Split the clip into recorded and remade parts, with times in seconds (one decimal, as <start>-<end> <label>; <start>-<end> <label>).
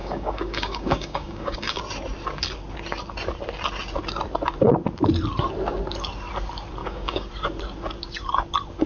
0.0-1.8 remade; 1.8-6.8 recorded; 6.8-7.3 remade; 7.3-8.9 recorded